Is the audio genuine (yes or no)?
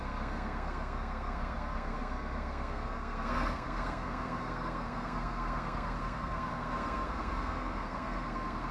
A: no